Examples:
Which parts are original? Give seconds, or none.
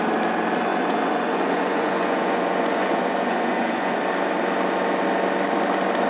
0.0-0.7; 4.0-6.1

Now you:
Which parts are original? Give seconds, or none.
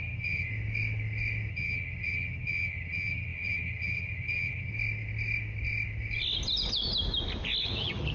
0.5-1.5; 4.7-7.6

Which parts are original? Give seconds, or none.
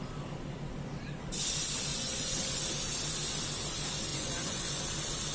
0.0-1.9; 2.6-4.1; 4.8-5.3